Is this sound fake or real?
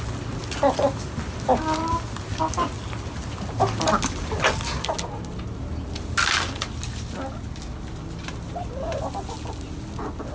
real